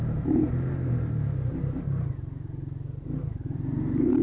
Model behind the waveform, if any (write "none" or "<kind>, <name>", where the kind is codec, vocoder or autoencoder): vocoder, BigVGAN v2